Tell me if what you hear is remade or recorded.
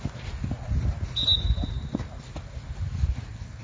recorded